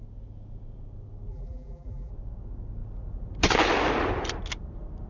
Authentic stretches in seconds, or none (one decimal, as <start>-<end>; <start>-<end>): 0.0-1.3; 2.1-5.1